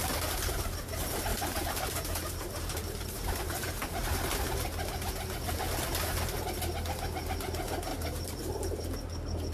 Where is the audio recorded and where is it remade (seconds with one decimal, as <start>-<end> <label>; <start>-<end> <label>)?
0.0-1.3 recorded; 1.3-4.2 remade; 4.2-7.9 recorded; 7.9-8.6 remade; 8.6-9.5 recorded

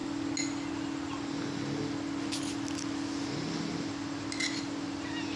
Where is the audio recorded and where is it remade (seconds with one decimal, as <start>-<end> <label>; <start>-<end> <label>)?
0.0-5.4 recorded

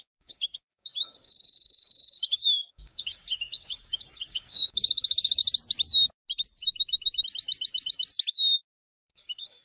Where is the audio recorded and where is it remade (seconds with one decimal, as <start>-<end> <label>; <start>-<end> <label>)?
0.0-5.4 remade; 5.4-8.3 recorded; 8.3-9.6 remade